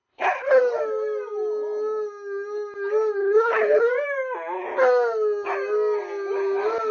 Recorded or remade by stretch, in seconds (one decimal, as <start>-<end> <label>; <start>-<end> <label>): 0.0-0.6 remade; 0.6-3.2 recorded; 3.2-3.9 remade; 3.9-6.9 recorded